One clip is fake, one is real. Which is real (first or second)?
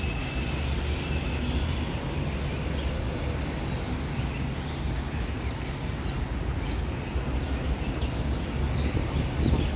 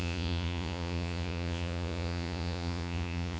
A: first